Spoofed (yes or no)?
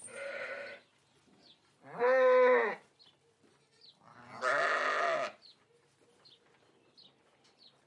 no